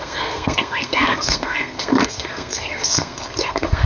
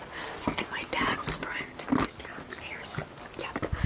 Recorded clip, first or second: second